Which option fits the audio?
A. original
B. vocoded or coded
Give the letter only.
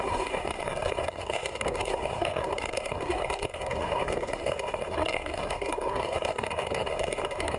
B